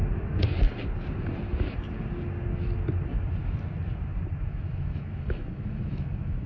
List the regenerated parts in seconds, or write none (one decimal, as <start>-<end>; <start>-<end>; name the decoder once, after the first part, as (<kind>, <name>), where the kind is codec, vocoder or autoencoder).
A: 4.4-6.5 (autoencoder, DAC-VAE)